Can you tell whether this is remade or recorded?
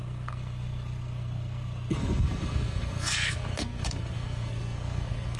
remade